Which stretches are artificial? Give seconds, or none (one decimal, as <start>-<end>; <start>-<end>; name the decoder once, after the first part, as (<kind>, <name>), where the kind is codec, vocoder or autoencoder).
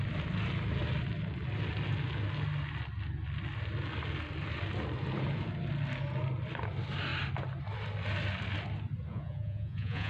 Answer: 9.1-10.1 (vocoder, Vocos)